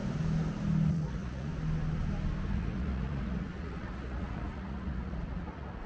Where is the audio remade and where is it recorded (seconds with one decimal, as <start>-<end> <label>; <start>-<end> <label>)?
0.0-0.9 recorded; 0.9-1.5 remade; 1.5-2.5 recorded; 2.5-5.9 remade